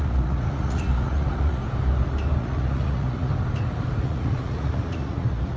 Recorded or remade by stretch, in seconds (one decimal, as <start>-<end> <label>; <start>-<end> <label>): 0.0-1.6 remade; 1.6-2.4 recorded; 2.4-3.3 remade; 3.3-4.0 recorded; 4.0-5.6 remade